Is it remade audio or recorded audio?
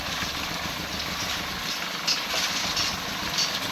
recorded